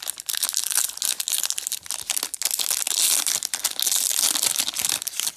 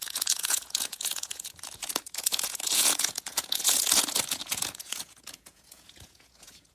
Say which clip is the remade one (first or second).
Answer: second